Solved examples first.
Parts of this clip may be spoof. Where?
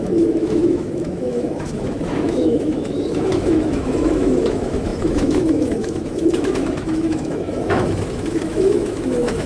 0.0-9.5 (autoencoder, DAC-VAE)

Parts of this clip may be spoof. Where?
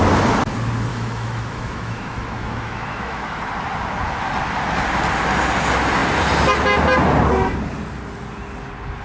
0.9-3.4 (autoencoder, DAC-VAE)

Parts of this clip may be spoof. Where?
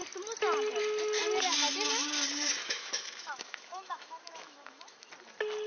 2.6-5.1 (autoencoder, DAC-VAE)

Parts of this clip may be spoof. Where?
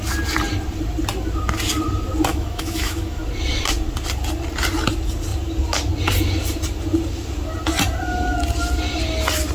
2.3-3.2 (autoencoder, DAC-VAE)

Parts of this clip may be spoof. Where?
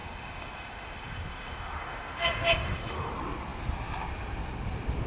0.0-3.1 (autoencoder, DAC-VAE)